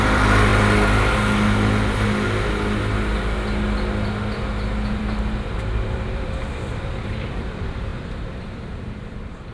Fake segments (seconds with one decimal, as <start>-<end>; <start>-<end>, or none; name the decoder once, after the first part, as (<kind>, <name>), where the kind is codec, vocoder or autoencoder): 0.0-0.5 (vocoder, BigVGAN v2); 4.9-9.5